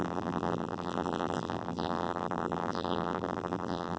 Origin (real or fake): fake